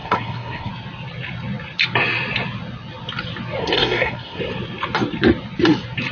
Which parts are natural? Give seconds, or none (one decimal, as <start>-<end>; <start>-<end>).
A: 0.7-3.6; 4.4-6.1